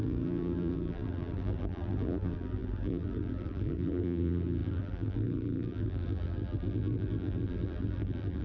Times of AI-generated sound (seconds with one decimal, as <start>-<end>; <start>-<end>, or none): 0.0-8.4